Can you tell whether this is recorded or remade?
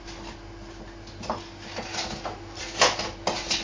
recorded